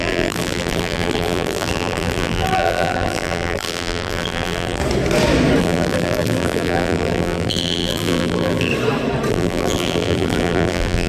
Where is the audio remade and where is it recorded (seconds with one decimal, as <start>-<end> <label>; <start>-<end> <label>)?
0.0-4.8 remade; 4.8-5.6 recorded; 5.6-8.7 remade; 8.7-9.3 recorded; 9.3-11.1 remade